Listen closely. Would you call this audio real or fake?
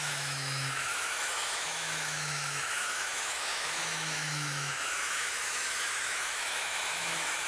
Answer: fake